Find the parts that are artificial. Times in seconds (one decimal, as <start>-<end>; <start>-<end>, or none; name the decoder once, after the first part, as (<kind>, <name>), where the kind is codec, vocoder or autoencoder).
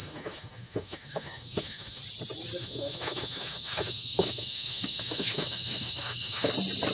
0.0-2.0 (autoencoder, DAC-VAE); 2.6-6.5